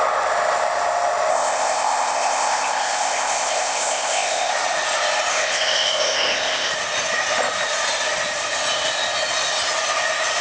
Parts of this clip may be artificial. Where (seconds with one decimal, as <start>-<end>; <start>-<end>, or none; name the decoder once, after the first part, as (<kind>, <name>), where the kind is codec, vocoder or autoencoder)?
1.3-4.5 (codec, ZipCodec); 5.3-6.7